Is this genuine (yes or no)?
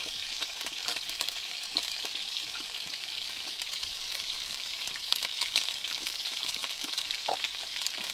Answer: no